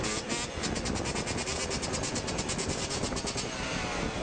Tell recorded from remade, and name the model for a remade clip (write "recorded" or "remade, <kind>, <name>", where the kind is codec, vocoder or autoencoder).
recorded